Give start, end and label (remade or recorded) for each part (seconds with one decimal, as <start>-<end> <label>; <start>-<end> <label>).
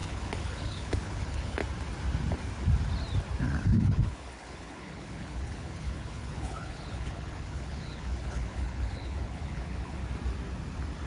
0.0-1.6 remade; 1.6-3.4 recorded; 3.4-10.0 remade; 10.0-11.1 recorded